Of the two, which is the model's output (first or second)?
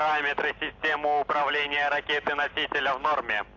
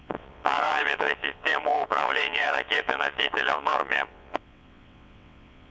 second